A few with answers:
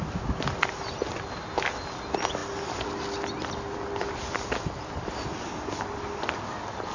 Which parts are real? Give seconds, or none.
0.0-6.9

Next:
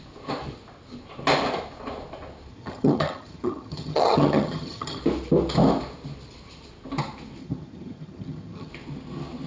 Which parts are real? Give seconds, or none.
0.0-2.5; 5.0-7.4; 8.7-9.5

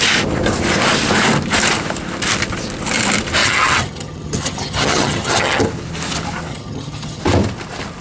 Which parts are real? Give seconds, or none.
0.0-3.4; 5.6-6.5; 7.2-8.0